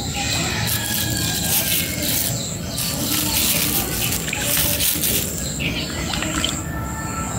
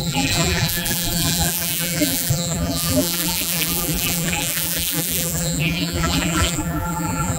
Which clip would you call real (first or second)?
first